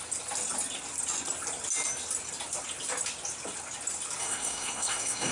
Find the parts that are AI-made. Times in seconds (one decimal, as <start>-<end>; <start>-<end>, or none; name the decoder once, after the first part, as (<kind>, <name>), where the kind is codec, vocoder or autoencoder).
4.2-5.3 (codec, SNAC)